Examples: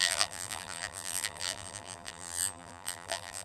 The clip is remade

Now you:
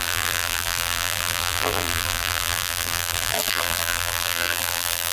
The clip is remade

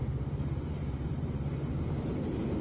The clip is recorded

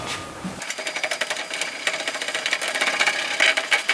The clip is recorded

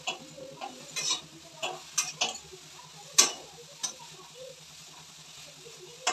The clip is recorded